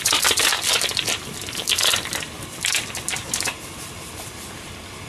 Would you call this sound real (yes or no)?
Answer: no